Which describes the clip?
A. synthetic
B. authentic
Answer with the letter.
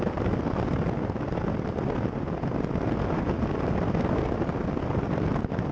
B